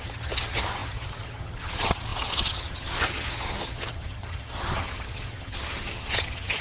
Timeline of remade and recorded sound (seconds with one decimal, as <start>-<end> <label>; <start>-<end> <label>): 0.0-6.6 remade